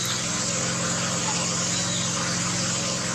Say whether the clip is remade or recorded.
recorded